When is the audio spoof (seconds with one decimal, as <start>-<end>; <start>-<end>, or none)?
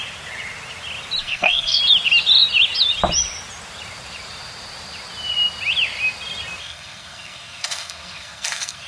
1.2-1.8; 6.6-8.9